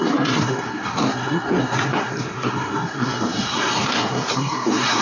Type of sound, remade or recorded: remade